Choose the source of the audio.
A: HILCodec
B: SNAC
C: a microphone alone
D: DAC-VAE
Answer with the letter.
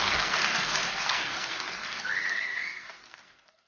B